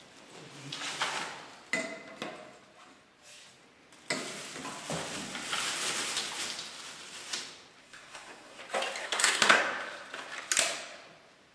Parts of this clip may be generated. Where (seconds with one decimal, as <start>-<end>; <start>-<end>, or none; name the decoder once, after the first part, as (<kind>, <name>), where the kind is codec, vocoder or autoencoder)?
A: 7.8-8.6 (codec, SNAC); 9.0-9.6